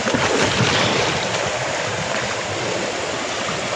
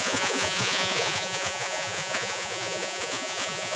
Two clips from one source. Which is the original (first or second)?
first